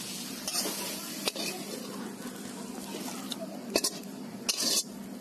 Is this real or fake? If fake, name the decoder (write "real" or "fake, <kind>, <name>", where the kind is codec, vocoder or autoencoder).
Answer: real